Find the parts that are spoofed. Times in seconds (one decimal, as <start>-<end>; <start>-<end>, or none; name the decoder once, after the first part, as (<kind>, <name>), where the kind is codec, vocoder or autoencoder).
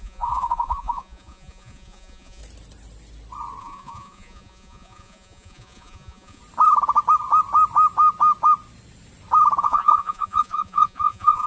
0.0-2.4 (vocoder, Vocos); 3.6-6.4; 9.6-11.5